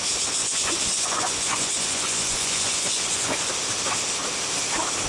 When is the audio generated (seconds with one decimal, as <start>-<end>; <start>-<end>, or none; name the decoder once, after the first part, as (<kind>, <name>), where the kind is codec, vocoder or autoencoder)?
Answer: 0.4-3.5 (vocoder, Vocos)